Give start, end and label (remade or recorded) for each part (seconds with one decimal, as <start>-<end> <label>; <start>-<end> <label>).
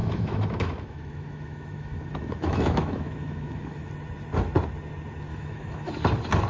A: 0.0-3.9 remade; 3.9-5.3 recorded; 5.3-5.9 remade; 5.9-6.5 recorded